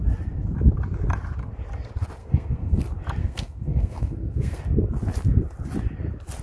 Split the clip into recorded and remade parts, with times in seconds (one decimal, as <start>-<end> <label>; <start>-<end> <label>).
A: 0.0-2.2 recorded; 2.2-2.8 remade; 2.8-3.2 recorded; 3.2-4.6 remade; 4.6-6.4 recorded